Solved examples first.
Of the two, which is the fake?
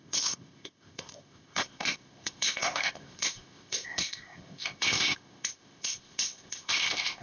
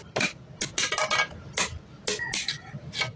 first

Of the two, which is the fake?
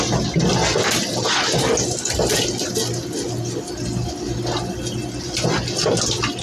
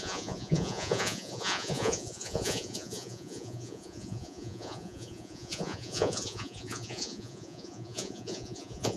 second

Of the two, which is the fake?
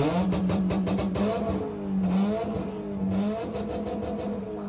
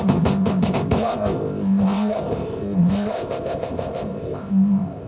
second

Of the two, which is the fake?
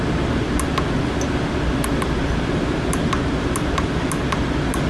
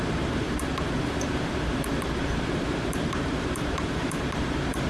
second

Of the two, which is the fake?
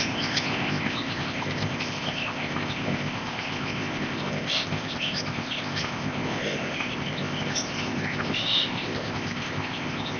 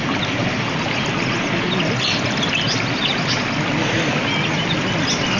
first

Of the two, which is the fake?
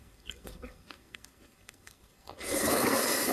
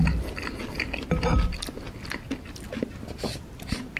first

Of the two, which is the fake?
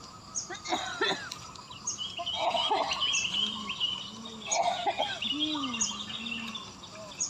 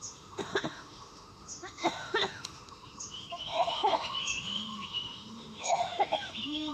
second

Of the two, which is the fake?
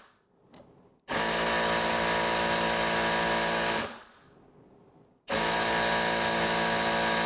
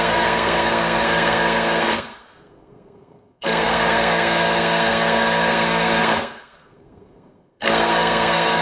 second